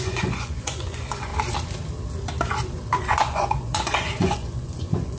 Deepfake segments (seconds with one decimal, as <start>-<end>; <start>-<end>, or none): 0.0-1.3; 3.0-5.2